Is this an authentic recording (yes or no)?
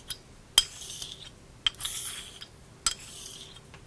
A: yes